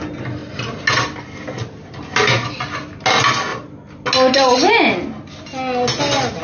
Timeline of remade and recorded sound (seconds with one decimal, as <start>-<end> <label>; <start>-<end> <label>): 0.0-6.4 recorded